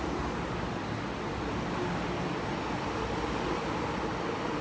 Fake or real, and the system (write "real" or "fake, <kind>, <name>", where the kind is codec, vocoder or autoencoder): real